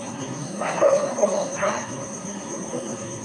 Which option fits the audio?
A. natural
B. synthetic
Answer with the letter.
B